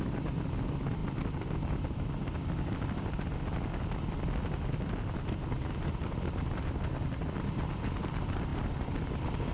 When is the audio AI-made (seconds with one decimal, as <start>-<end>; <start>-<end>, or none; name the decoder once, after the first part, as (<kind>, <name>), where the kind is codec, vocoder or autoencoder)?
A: 0.0-1.0 (vocoder, BigVGAN v2); 5.0-9.5